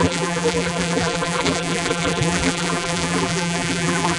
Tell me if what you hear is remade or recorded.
remade